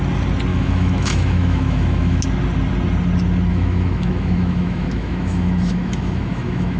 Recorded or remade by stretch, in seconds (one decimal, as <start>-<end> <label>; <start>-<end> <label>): 0.0-0.5 recorded; 0.5-2.2 remade; 2.2-3.5 recorded; 3.5-6.8 remade